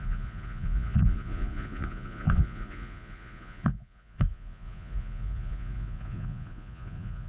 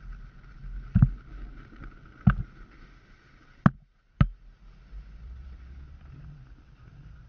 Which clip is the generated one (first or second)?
first